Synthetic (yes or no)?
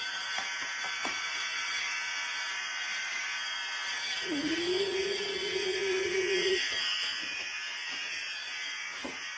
yes